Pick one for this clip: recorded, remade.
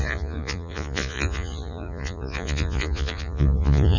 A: remade